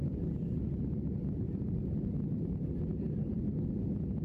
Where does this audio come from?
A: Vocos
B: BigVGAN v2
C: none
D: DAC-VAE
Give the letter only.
C